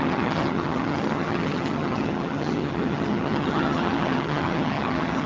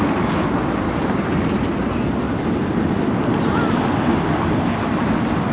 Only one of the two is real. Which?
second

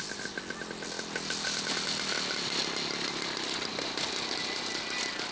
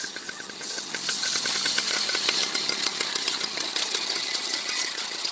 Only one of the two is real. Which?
first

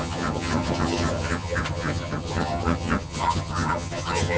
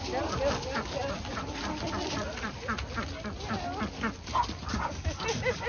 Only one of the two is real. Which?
second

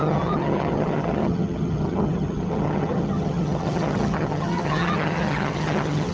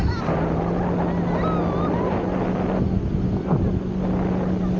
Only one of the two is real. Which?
second